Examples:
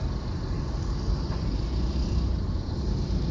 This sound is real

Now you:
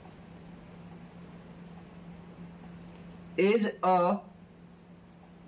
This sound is real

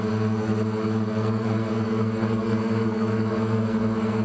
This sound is fake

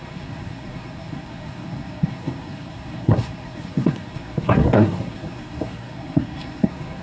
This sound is fake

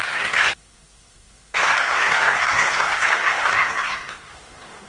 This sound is fake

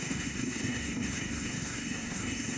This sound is fake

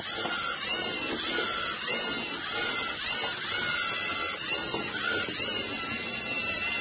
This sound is real